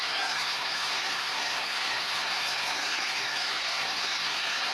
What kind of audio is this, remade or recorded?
remade